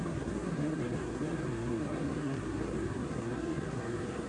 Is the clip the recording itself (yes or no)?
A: no